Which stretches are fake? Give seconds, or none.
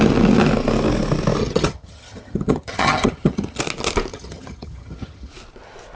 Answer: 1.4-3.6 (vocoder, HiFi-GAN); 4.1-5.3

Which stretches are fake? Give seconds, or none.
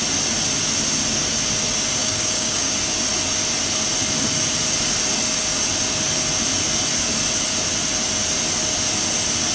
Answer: 2.0-2.7 (codec, DAC)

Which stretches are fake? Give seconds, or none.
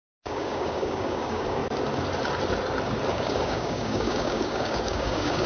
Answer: 0.0-1.6 (codec, DAC); 3.1-5.5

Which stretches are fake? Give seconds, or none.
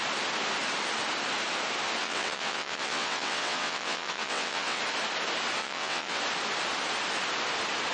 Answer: 2.0-4.8 (vocoder, WaveNeXt); 5.6-6.2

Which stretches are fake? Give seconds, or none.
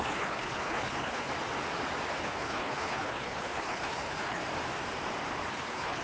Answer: 0.0-1.3 (codec, HILCodec); 2.2-4.4; 5.5-6.0